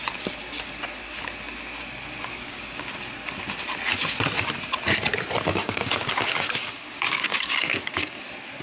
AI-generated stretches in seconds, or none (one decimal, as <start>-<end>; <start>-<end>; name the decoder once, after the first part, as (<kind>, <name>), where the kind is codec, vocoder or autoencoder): 2.2-2.9 (codec, DAC); 5.5-8.2